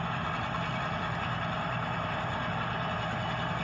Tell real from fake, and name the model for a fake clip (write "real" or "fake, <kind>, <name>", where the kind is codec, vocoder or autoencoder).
real